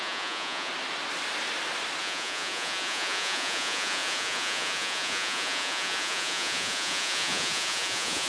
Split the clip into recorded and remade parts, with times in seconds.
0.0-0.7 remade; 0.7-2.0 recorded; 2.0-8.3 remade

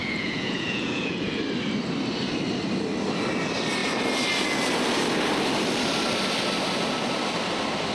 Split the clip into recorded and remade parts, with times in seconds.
0.0-1.4 remade; 1.4-7.9 recorded